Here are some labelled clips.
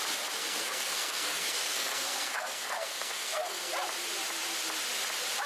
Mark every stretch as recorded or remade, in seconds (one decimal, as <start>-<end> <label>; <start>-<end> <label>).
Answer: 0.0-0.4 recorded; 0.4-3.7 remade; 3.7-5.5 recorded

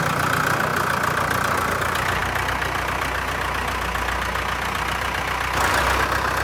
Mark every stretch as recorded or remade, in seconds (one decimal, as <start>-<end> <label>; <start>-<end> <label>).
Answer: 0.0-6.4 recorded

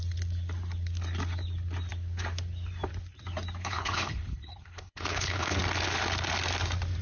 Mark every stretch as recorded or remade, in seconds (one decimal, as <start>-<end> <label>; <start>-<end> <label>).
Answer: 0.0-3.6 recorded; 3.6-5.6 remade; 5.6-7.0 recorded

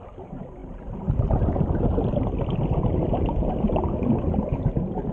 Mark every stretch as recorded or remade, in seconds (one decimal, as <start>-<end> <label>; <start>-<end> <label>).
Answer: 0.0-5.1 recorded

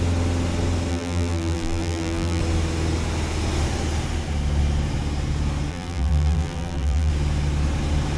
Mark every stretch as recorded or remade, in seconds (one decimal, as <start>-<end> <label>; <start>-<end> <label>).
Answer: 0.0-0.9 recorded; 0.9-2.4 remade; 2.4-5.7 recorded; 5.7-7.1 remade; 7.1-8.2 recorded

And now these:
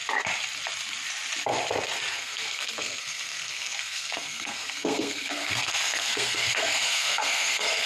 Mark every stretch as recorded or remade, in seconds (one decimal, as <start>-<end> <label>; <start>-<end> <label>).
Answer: 0.0-2.1 recorded; 2.1-7.9 remade

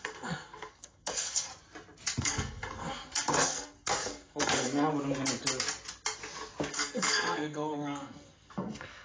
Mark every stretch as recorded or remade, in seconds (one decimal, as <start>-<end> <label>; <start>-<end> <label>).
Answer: 0.0-1.5 remade; 1.5-2.2 recorded; 2.2-4.9 remade; 4.9-6.7 recorded; 6.7-9.0 remade